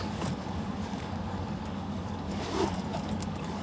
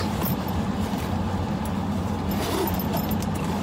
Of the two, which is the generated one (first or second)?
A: first